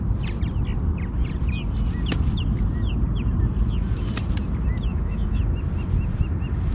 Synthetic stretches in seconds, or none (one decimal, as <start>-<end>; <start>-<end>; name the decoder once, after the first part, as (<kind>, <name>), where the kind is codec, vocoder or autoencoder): 4.9-5.4 (autoencoder, DAC-VAE)